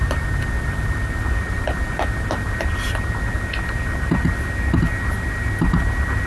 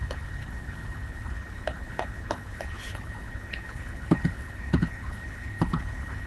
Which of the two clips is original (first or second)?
first